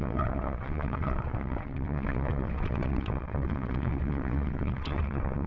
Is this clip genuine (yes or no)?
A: no